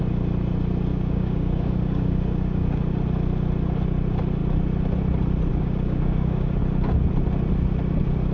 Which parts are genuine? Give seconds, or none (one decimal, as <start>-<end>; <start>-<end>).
0.0-0.9; 2.8-5.5; 6.6-8.3